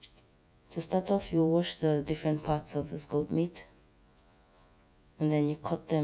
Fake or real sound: fake